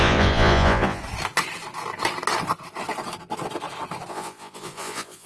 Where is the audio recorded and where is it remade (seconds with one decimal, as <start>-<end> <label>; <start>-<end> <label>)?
0.0-1.0 remade; 1.0-4.1 recorded; 4.1-5.3 remade